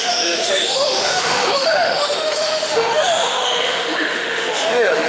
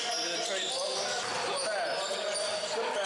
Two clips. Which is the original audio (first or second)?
second